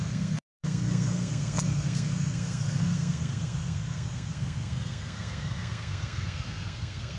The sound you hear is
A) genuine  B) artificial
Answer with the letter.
B